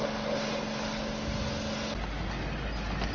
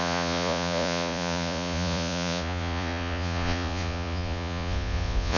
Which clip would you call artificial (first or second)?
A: second